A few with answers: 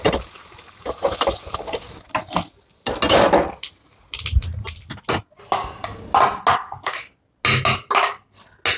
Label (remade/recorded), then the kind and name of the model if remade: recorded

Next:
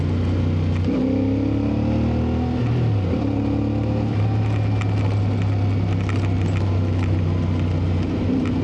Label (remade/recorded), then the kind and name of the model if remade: recorded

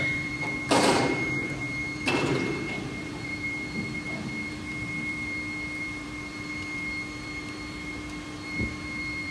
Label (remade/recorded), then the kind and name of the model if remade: remade, vocoder, BigVGAN v2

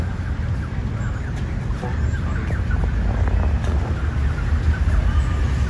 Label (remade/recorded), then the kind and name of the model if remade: recorded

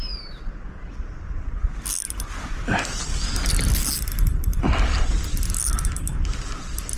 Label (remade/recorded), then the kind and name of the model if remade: recorded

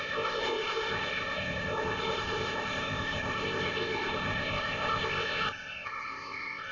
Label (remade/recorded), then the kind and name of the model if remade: remade, codec, ZipCodec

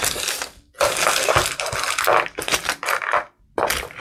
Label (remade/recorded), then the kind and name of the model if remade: recorded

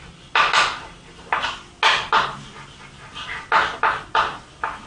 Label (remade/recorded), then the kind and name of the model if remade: recorded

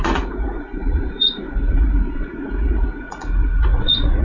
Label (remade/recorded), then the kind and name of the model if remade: remade, vocoder, Vocos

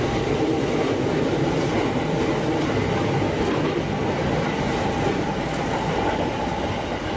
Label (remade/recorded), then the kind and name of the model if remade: recorded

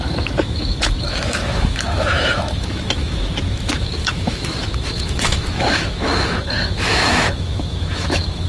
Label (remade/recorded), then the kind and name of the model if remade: remade, autoencoder, DAC-VAE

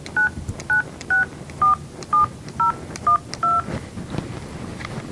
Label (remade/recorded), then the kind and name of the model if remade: recorded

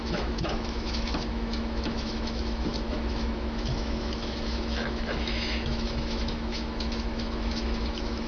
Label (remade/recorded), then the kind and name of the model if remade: remade, autoencoder, DAC-VAE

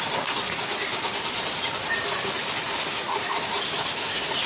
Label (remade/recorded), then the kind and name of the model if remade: recorded